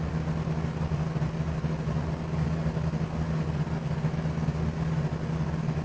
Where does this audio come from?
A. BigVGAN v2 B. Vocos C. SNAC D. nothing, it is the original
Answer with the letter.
D